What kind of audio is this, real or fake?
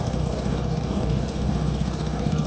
fake